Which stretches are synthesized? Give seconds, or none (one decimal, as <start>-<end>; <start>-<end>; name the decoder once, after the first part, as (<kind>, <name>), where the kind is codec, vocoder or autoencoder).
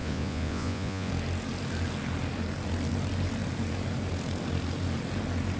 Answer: 0.0-1.1 (vocoder, Vocos)